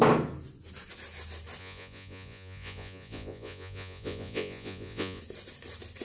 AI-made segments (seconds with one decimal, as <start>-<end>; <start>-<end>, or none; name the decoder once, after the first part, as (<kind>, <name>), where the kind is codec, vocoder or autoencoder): 1.6-5.2 (vocoder, Vocos)